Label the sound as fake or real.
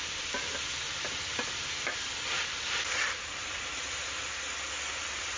real